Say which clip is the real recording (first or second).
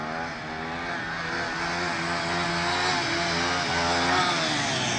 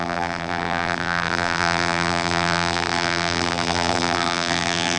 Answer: first